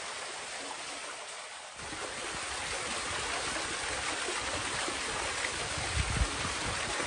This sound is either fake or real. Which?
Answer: real